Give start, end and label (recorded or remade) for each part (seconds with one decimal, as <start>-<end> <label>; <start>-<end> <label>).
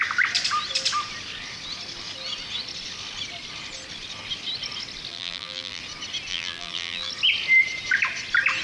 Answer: 0.0-5.1 recorded; 5.1-5.8 remade; 5.8-6.3 recorded; 6.3-7.1 remade; 7.1-8.6 recorded